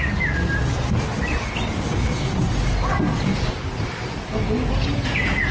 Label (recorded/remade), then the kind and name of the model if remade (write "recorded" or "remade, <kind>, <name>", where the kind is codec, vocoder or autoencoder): recorded